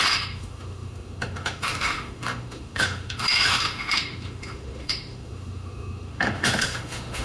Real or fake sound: fake